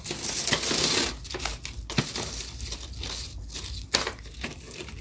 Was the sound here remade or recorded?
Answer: recorded